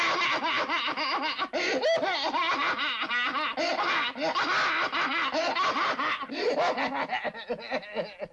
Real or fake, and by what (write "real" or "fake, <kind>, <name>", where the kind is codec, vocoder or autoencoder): real